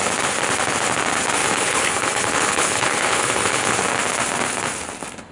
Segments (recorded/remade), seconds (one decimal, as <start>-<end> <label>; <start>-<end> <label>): 0.0-1.4 recorded; 1.4-3.7 remade; 3.7-5.3 recorded